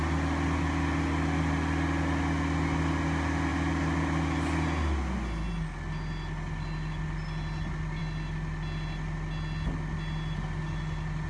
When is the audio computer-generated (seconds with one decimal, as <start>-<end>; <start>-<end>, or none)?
none